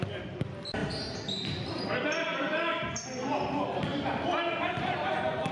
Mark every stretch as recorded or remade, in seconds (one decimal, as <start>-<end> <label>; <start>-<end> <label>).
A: 0.0-0.8 recorded; 0.8-1.8 remade; 1.8-2.3 recorded; 2.3-2.9 remade; 2.9-5.5 recorded